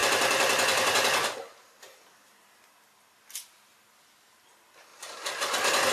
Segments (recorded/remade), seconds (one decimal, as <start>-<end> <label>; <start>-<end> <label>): 0.0-0.9 remade; 0.9-5.9 recorded